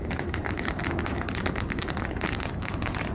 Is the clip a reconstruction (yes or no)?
yes